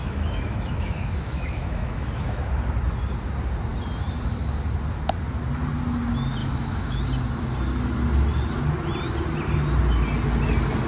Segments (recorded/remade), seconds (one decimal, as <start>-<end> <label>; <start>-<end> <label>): 0.0-2.5 remade; 2.5-6.4 recorded; 6.4-7.0 remade; 7.0-10.9 recorded